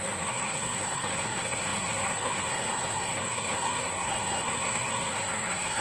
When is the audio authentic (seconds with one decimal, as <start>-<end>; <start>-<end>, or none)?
none